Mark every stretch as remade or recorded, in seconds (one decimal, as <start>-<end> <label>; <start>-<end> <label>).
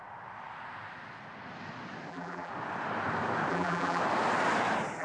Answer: 0.0-2.1 recorded; 2.1-2.5 remade; 2.5-3.5 recorded; 3.5-4.0 remade; 4.0-5.0 recorded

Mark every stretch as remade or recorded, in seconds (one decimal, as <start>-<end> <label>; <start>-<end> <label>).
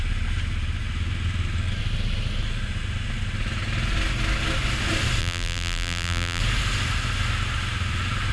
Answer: 0.0-5.2 recorded; 5.2-6.4 remade; 6.4-8.3 recorded